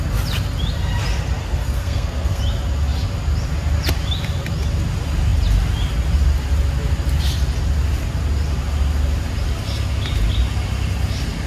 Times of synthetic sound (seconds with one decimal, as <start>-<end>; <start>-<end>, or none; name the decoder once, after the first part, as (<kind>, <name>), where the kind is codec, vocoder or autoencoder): 1.4-2.4 (codec, SNAC)